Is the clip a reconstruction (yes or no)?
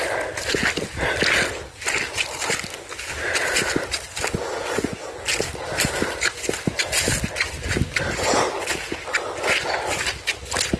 no